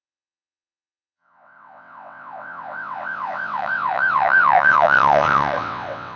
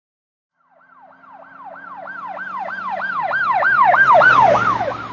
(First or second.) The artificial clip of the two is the first